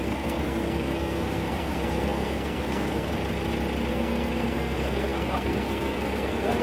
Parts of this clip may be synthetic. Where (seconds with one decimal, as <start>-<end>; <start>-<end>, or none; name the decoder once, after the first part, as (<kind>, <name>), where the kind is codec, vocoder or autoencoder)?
0.0-3.1 (codec, SNAC); 3.9-6.6